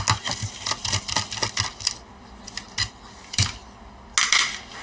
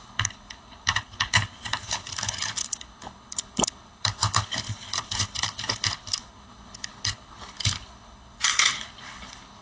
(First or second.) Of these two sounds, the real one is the first